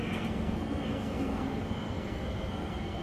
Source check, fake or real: fake